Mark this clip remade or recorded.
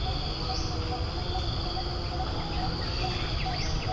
recorded